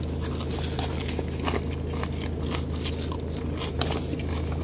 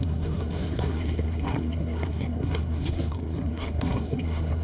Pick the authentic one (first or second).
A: first